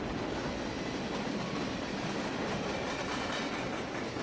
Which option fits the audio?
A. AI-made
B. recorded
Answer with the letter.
B